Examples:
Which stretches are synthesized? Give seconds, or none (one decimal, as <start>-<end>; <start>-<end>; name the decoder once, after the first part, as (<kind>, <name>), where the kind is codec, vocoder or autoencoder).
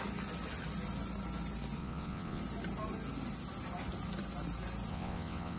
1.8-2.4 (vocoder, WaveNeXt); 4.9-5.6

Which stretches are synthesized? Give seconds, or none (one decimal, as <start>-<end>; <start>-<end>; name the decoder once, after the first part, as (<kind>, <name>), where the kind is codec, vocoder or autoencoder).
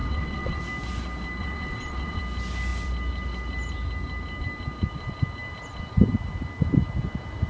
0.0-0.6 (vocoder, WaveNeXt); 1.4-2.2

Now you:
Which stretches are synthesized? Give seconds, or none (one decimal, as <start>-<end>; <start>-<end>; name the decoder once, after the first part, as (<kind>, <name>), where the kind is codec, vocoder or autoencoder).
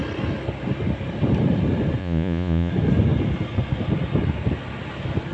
2.0-2.7 (vocoder, Vocos)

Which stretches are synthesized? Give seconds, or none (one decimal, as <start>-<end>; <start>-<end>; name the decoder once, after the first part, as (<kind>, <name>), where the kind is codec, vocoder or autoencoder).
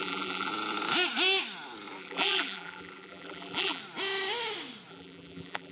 0.0-0.5 (vocoder, BigVGAN v2); 2.0-3.8; 4.9-5.7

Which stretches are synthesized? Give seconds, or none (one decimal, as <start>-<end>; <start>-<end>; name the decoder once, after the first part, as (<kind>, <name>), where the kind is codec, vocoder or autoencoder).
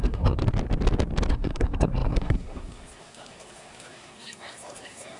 0.0-0.4 (codec, SNAC); 1.3-5.2